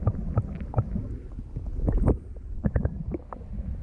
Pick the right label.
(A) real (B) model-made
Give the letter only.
A